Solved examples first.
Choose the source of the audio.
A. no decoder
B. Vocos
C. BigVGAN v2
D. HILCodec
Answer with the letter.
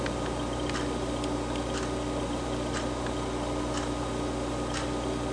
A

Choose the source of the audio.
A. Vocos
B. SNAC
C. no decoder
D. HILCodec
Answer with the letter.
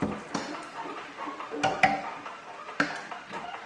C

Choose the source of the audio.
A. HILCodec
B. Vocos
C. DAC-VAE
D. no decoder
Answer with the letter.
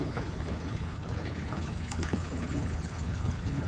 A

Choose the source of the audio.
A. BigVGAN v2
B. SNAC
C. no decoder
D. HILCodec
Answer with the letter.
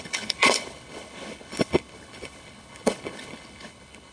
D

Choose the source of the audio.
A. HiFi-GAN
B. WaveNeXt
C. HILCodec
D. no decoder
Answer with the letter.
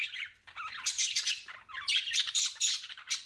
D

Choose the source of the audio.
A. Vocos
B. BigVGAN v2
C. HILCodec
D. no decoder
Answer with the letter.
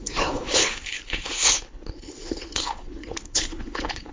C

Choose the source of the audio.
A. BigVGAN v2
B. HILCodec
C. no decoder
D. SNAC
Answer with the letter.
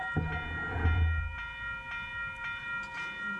C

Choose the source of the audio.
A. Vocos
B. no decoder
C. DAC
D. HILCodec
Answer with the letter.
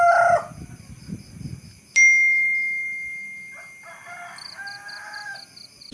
B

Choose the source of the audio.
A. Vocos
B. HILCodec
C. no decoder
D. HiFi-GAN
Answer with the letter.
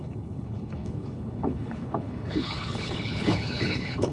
B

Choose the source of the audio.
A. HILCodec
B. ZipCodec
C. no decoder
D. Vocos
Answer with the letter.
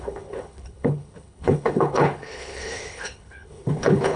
A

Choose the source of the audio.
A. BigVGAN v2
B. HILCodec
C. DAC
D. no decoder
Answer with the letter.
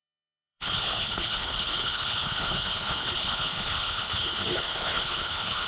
B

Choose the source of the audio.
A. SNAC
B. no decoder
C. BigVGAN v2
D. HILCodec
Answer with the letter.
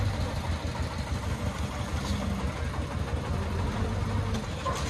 B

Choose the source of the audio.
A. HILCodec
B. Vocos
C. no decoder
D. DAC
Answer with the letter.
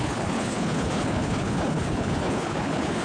A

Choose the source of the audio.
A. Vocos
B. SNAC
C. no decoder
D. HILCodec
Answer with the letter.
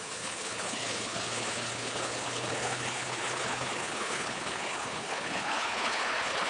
D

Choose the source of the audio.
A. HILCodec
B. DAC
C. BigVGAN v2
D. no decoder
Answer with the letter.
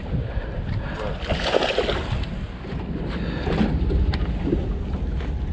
D